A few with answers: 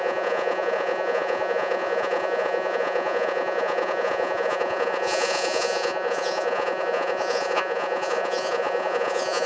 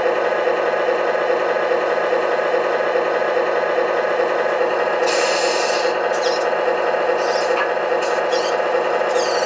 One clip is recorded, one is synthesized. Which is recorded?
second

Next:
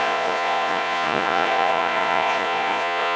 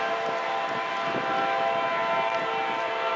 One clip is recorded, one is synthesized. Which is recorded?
second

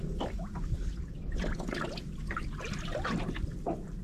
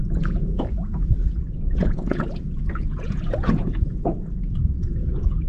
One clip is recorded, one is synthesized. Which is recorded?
first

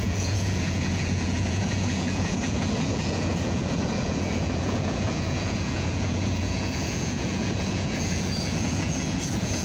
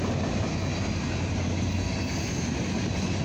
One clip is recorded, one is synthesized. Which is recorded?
second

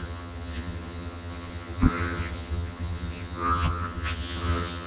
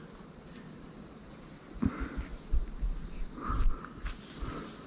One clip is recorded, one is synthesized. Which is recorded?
second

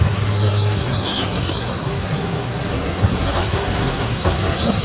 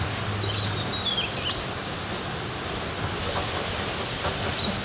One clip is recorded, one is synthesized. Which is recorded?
second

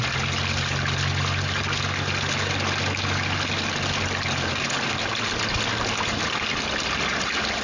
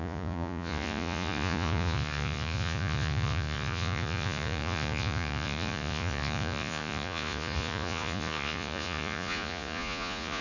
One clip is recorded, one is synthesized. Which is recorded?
first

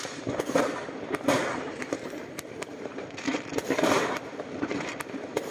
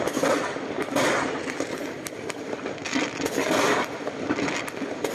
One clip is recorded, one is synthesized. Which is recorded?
second